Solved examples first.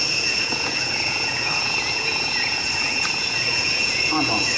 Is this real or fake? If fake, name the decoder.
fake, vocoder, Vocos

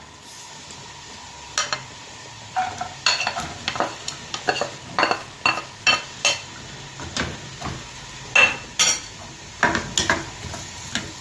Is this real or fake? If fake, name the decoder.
real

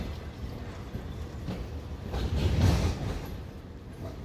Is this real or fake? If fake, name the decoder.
real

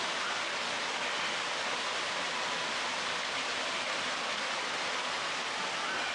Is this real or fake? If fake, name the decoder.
real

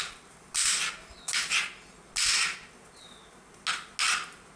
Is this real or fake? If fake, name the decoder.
real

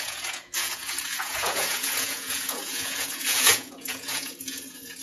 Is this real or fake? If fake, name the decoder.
fake, vocoder, Vocos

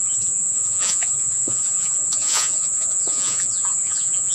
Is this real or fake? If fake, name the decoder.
fake, vocoder, Vocos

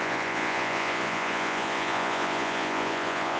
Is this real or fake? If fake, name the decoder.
fake, vocoder, Vocos